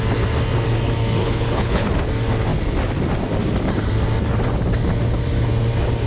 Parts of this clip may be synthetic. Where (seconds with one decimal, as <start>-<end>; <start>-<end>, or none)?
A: 1.2-1.9